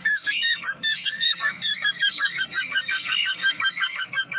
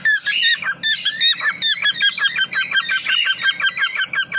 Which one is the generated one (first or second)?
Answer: first